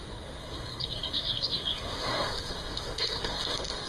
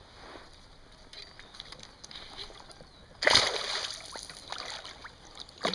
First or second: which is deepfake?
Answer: first